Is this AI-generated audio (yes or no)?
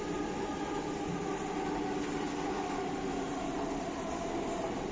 no